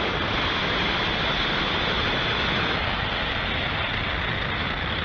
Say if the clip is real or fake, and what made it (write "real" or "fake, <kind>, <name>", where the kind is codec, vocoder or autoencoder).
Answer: real